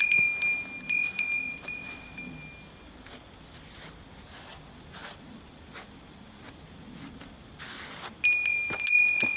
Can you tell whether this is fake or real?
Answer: real